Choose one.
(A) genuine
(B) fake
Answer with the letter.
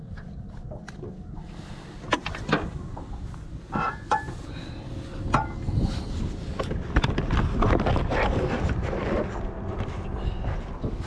A